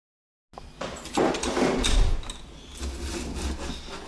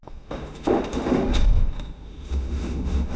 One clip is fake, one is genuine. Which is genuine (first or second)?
first